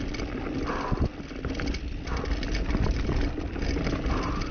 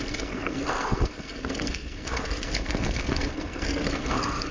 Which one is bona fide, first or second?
first